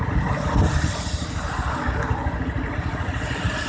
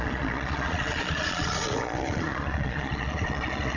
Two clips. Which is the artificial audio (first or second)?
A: second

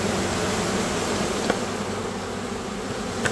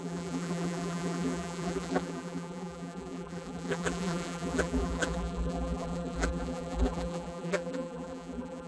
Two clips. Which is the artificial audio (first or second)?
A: second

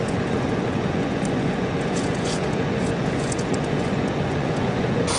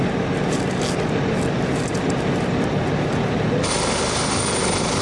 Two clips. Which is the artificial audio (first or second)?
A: first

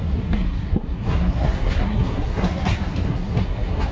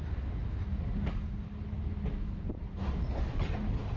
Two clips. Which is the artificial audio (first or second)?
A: first